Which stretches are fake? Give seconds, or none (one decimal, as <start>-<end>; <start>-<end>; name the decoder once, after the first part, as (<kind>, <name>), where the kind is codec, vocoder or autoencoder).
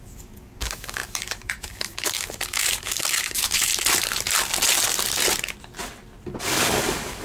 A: 0.0-3.7 (codec, DAC); 6.4-7.2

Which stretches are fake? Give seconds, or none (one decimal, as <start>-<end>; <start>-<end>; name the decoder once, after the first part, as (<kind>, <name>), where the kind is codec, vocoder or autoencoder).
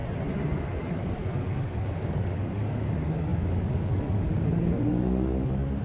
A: 0.9-5.8 (codec, DAC)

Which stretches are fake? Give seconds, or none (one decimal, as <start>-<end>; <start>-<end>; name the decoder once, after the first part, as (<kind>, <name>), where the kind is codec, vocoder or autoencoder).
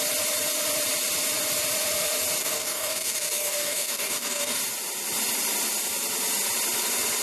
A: 2.4-4.6 (codec, DAC)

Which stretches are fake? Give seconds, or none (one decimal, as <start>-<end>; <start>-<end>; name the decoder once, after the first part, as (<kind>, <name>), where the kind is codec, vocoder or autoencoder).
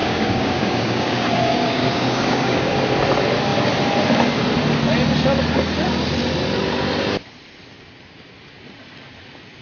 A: 0.0-2.7 (codec, DAC)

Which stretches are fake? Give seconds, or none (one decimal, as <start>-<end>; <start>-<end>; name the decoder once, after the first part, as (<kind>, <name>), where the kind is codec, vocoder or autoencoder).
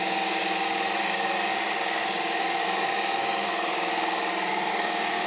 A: 0.0-5.3 (codec, DAC)